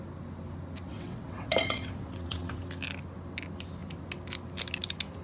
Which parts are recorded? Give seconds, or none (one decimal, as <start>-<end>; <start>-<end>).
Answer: 0.0-0.9; 2.6-5.2